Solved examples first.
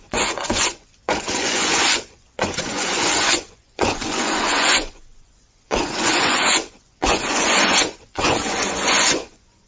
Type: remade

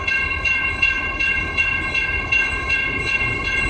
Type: remade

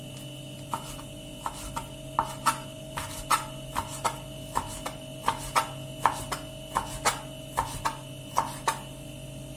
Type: recorded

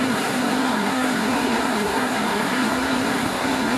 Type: remade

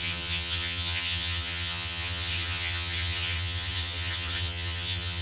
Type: remade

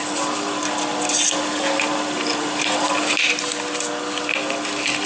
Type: recorded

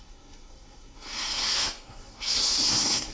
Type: remade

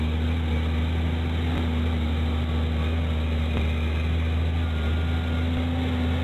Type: recorded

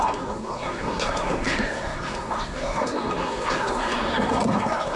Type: remade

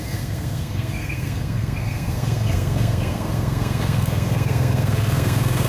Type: remade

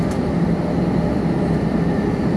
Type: recorded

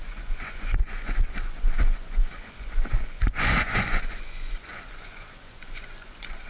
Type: remade